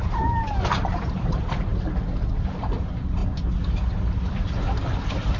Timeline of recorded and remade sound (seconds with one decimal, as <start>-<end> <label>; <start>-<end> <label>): 0.0-1.7 remade; 1.7-2.4 recorded; 2.4-3.2 remade; 3.2-4.3 recorded; 4.3-5.4 remade